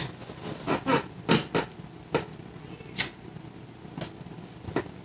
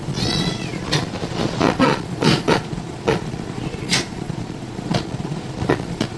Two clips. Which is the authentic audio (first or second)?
first